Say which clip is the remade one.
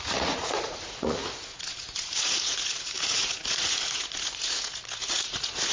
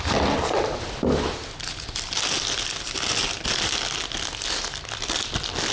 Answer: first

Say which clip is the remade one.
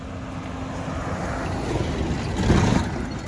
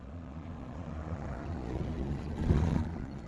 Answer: second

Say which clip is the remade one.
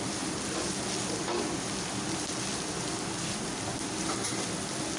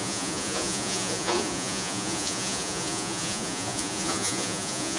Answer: second